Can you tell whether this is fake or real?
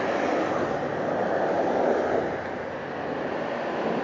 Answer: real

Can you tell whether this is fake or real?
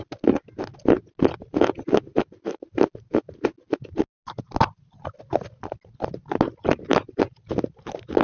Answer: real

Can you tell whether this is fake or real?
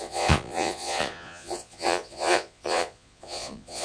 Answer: fake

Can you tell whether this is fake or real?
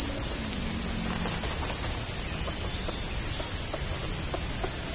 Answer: real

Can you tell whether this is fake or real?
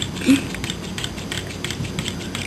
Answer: real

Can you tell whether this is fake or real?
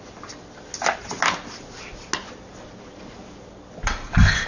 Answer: real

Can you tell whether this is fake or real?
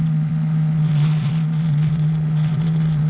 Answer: fake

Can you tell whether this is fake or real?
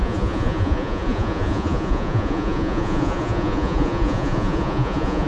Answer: fake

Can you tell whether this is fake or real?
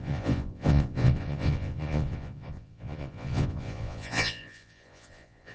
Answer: fake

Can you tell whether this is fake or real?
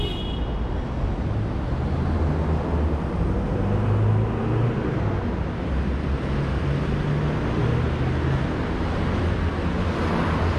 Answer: real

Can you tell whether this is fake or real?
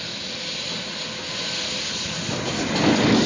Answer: real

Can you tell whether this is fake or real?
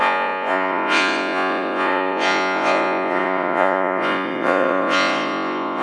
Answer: fake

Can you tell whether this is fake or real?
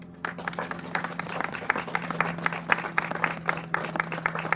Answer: real